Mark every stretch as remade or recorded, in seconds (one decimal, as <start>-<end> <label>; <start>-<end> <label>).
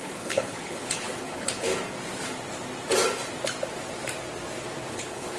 0.0-1.7 remade; 1.7-4.9 recorded; 4.9-5.4 remade